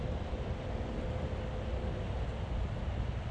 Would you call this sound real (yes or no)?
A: yes